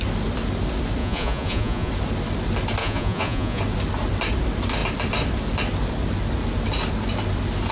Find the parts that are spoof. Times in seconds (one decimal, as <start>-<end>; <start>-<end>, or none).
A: 1.0-1.9; 2.8-3.6